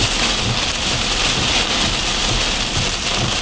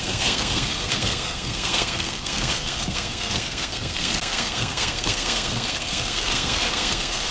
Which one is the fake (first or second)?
second